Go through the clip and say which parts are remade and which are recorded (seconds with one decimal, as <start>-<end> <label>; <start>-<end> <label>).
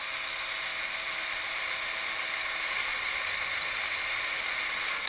0.0-0.7 recorded; 0.7-1.9 remade; 1.9-2.9 recorded; 2.9-4.5 remade; 4.5-5.1 recorded